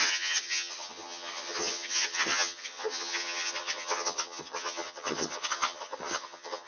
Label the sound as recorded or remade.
remade